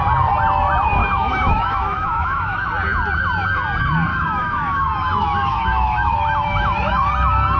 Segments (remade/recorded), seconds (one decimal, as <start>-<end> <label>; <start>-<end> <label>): 0.0-1.0 recorded; 1.0-2.7 remade; 2.7-4.1 recorded; 4.1-7.1 remade; 7.1-7.6 recorded